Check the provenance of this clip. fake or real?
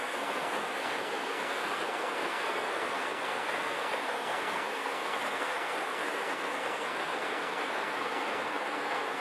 fake